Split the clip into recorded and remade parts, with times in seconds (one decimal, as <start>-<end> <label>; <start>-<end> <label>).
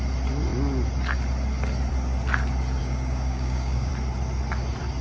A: 0.0-2.8 recorded; 2.8-3.9 remade; 3.9-5.0 recorded